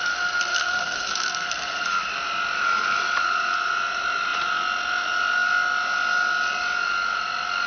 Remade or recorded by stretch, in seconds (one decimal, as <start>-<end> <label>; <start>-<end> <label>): 0.0-0.5 recorded; 0.5-2.0 remade; 2.0-7.7 recorded